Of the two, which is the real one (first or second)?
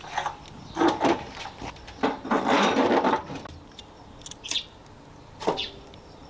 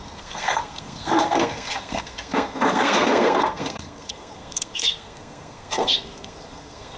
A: first